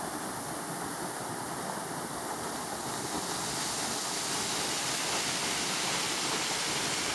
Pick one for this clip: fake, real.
real